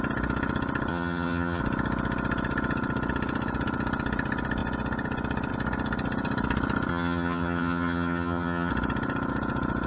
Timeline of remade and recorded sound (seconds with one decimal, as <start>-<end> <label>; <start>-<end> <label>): 0.0-0.9 recorded; 0.9-1.6 remade; 1.6-6.9 recorded; 6.9-8.7 remade; 8.7-9.9 recorded